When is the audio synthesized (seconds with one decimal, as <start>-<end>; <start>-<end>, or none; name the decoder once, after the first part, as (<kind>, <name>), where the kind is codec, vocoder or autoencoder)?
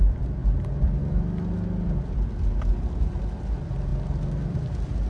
0.0-0.4 (vocoder, BigVGAN v2); 3.5-5.1